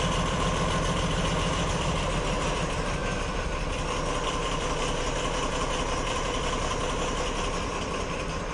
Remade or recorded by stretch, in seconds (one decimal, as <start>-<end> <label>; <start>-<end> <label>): 0.0-6.8 remade; 6.8-7.4 recorded; 7.4-8.5 remade